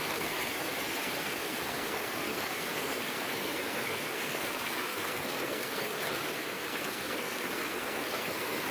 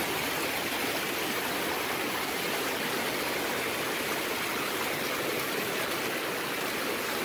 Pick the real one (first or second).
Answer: second